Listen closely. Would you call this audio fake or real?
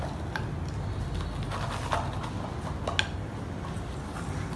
real